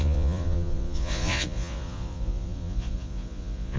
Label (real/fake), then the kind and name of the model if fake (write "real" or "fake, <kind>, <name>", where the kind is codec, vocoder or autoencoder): fake, vocoder, Vocos